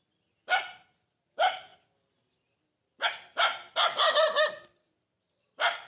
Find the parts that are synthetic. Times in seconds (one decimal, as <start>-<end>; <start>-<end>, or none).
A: none